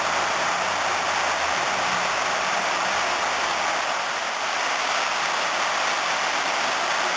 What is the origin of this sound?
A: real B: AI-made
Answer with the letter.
A